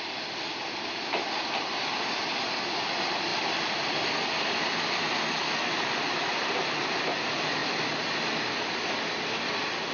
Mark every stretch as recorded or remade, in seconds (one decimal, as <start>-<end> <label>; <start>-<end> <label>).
0.0-3.3 recorded; 3.3-3.8 remade; 3.8-9.9 recorded

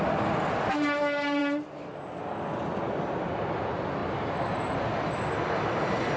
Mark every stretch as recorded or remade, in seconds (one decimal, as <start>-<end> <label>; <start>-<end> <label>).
0.0-6.2 recorded

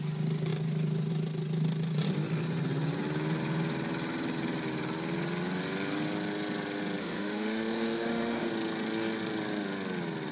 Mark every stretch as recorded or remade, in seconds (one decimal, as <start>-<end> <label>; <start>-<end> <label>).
0.0-7.0 recorded; 7.0-8.5 remade; 8.5-10.3 recorded

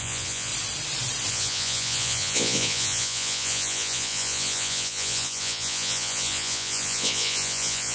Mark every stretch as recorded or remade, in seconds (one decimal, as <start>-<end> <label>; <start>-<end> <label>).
0.0-0.5 remade; 0.5-1.3 recorded; 1.3-7.9 remade

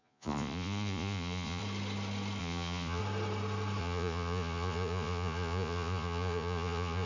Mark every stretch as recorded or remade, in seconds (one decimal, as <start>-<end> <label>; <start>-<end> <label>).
0.0-1.6 remade; 1.6-2.4 recorded; 2.4-3.0 remade; 3.0-3.8 recorded; 3.8-7.1 remade

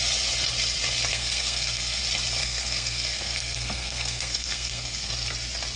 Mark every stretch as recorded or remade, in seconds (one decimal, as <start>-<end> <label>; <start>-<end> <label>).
0.0-1.1 recorded; 1.1-2.0 remade; 2.0-2.4 recorded; 2.4-5.1 remade; 5.1-5.8 recorded

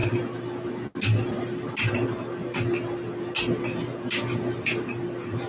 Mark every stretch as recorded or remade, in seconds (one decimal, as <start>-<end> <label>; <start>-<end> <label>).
0.0-5.5 recorded

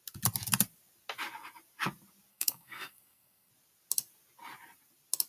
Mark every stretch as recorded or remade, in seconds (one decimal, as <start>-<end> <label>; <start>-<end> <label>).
0.0-2.3 recorded; 2.3-3.5 remade; 3.5-5.3 recorded